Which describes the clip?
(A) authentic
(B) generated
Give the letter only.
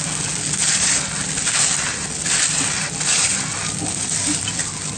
A